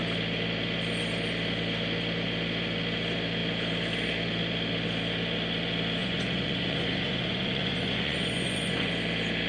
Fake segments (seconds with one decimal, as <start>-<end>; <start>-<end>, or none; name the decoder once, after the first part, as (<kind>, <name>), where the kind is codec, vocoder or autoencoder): 6.0-8.9 (vocoder, Vocos)